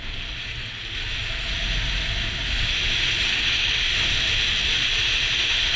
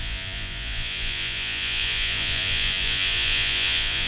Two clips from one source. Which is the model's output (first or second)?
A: second